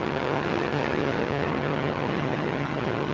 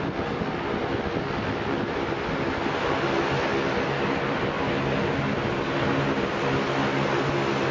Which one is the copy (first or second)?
first